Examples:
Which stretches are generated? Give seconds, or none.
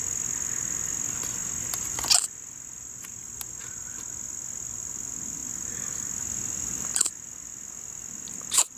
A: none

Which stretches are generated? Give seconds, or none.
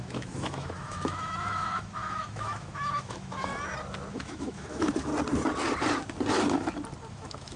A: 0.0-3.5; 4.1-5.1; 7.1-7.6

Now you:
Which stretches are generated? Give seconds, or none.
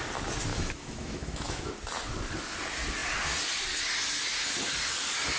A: 0.5-1.7